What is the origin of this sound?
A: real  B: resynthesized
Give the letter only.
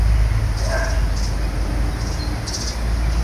A